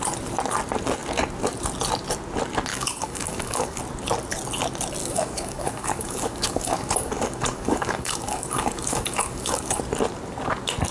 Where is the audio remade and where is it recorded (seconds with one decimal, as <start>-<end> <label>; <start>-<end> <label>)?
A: 0.0-2.7 recorded; 2.7-3.8 remade; 3.8-5.0 recorded; 5.0-9.8 remade; 9.8-10.9 recorded